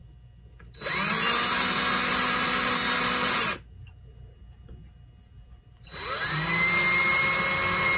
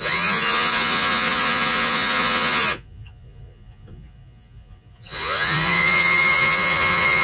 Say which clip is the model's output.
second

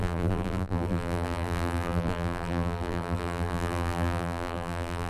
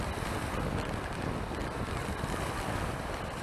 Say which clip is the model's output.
first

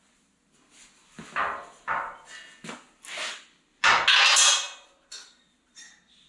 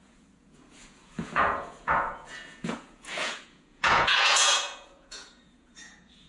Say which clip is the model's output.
second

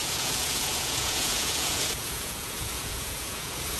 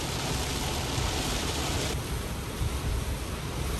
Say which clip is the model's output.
first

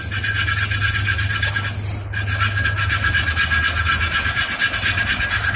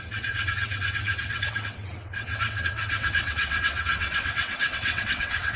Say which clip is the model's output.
second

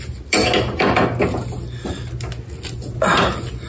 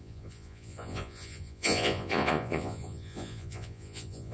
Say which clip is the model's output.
second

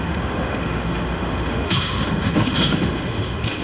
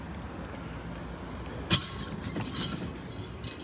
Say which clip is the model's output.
first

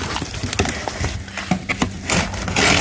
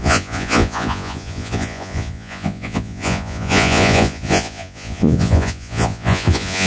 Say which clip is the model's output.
second